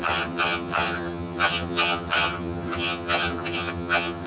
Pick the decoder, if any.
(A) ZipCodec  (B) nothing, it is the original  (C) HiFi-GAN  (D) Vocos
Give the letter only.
C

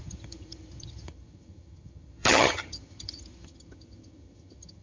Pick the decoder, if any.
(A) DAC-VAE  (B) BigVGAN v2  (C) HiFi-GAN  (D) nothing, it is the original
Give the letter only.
C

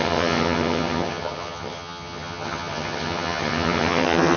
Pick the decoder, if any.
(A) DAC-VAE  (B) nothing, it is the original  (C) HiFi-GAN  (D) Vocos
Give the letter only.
C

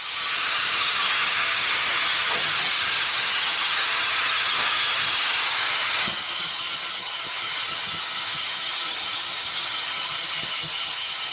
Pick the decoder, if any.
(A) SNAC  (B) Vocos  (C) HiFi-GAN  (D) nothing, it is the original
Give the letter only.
C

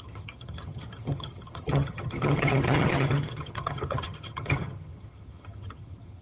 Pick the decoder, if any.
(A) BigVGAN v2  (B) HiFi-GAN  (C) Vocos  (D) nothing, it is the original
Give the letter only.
B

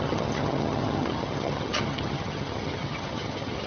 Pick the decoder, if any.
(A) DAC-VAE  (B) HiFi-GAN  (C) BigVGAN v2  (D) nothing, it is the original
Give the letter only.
B